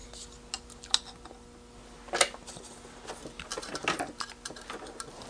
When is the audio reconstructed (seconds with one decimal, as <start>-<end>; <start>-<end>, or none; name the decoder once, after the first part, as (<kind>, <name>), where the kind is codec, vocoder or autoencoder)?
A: none